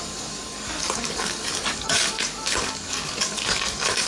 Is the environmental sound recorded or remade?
remade